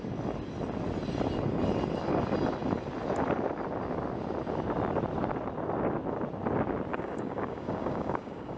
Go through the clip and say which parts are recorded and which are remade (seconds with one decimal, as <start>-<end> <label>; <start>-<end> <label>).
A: 0.0-6.9 recorded; 6.9-8.6 remade